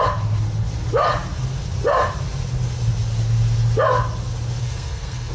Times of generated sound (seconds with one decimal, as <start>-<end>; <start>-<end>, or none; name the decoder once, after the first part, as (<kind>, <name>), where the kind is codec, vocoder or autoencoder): 4.6-5.3 (codec, SNAC)